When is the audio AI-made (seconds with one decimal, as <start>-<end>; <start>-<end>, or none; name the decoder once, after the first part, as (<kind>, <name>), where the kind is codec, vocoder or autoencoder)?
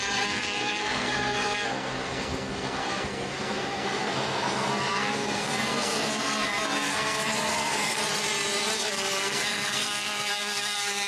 0.0-8.0 (codec, SNAC); 8.8-11.1